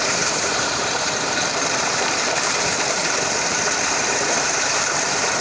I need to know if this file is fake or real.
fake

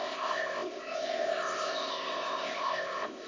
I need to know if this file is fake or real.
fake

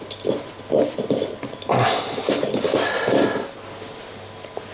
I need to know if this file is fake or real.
real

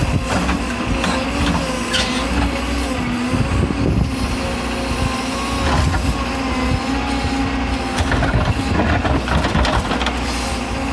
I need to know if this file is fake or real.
real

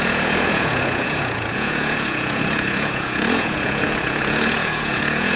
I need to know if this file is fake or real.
fake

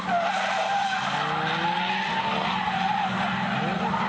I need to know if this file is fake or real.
real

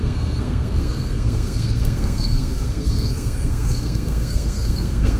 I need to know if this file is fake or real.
fake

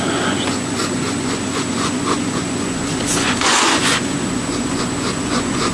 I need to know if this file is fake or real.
fake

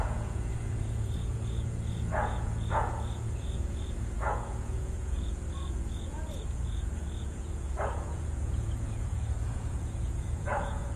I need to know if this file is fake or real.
fake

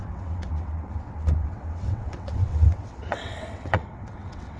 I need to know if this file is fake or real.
fake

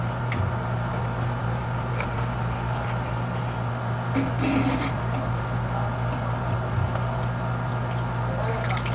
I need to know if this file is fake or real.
real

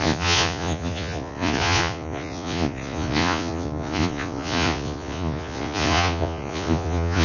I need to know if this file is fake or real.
fake